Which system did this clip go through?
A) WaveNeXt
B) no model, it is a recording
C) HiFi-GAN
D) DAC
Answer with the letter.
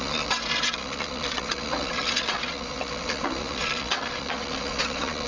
A